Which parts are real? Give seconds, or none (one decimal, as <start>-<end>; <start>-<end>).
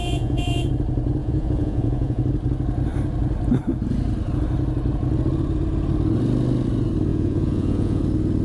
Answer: 0.7-1.2; 2.2-7.1; 8.0-8.4